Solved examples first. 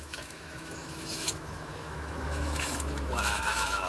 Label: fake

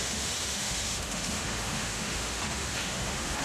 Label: fake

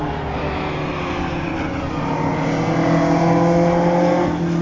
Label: real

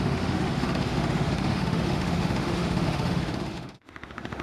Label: fake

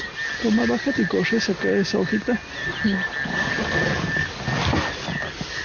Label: real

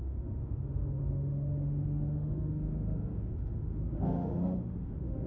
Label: fake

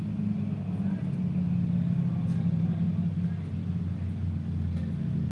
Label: real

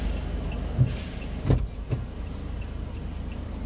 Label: real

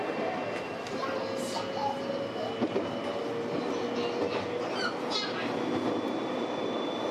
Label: real